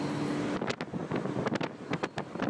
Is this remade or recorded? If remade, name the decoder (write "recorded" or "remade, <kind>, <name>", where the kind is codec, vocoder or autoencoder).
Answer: recorded